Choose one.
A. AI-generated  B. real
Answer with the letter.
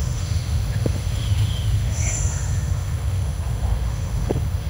A